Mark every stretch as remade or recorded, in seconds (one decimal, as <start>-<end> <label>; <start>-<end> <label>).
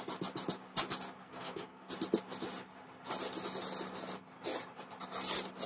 0.0-1.2 recorded; 1.2-1.9 remade; 1.9-5.7 recorded